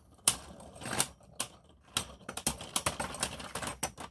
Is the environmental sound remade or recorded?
recorded